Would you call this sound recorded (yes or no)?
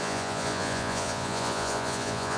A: no